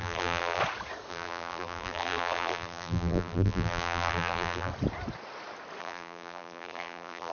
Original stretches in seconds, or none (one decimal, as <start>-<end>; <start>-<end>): 0.6-1.1; 4.7-5.8